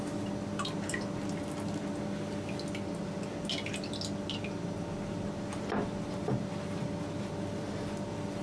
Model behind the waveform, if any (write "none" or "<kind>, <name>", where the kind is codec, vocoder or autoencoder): none